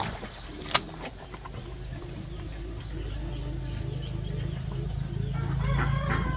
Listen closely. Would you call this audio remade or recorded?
recorded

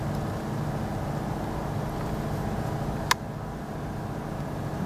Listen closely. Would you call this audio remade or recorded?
recorded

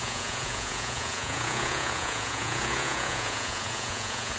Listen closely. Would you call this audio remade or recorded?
remade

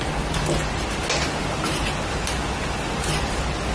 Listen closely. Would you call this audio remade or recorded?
recorded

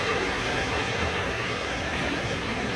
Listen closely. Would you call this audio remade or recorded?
remade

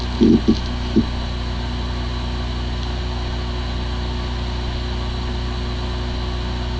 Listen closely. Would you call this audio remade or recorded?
recorded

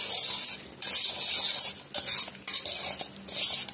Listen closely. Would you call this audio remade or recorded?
recorded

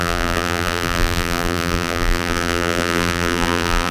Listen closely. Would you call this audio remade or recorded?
remade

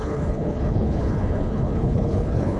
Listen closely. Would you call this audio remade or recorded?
remade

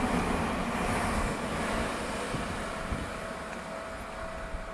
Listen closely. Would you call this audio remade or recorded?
recorded